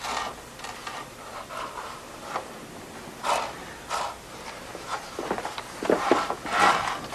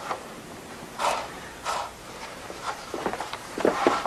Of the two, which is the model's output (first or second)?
second